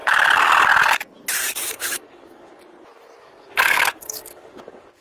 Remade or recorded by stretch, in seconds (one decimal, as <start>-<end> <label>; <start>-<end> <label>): 0.0-1.4 recorded; 1.4-2.6 remade; 2.6-3.2 recorded; 3.2-5.0 remade